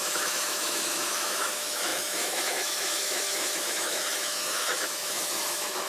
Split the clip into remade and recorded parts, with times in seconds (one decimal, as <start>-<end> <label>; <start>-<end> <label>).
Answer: 0.0-5.9 remade